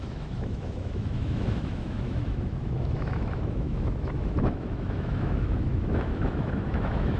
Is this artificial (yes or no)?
yes